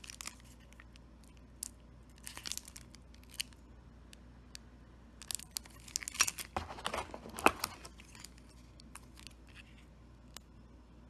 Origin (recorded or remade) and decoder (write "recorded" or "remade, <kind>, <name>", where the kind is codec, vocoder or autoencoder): recorded